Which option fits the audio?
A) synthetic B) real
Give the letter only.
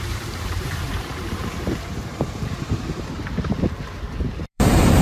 A